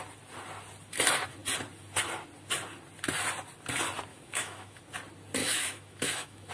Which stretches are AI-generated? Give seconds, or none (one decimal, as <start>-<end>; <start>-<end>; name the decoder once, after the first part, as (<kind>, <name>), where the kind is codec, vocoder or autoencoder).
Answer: 4.1-4.8 (autoencoder, DAC-VAE); 5.4-6.5